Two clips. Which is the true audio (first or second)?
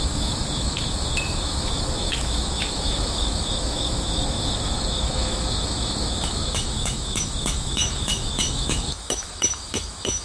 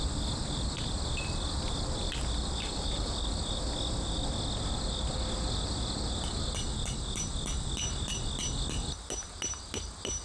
second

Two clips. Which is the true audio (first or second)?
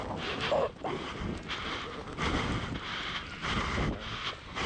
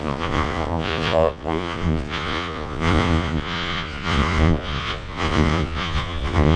first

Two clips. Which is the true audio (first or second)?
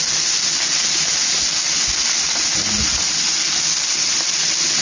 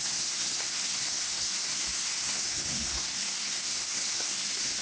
first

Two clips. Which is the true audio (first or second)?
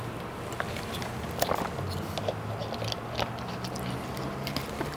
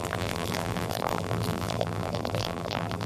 first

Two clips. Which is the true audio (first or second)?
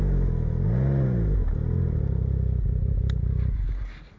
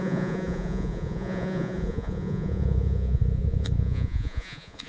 first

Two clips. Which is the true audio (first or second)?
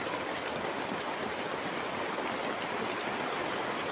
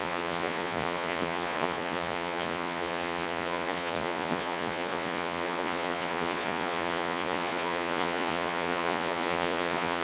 first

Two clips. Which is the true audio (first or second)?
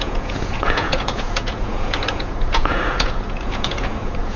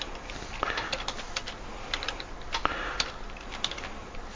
second